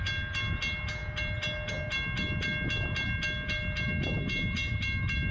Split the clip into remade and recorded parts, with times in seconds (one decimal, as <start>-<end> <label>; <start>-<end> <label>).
0.0-5.3 recorded